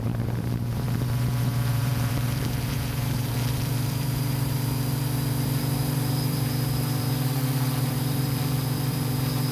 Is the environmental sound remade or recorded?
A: remade